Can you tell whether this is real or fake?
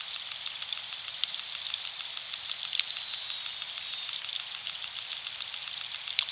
real